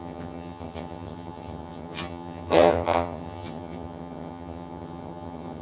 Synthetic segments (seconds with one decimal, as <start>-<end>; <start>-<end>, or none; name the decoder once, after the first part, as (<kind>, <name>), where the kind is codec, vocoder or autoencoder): 0.0-5.6 (vocoder, HiFi-GAN)